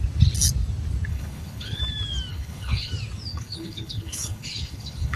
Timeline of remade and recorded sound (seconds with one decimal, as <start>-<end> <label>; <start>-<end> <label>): 0.0-1.1 recorded; 1.1-1.8 remade; 1.8-2.3 recorded; 2.3-2.9 remade; 2.9-3.3 recorded; 3.3-5.2 remade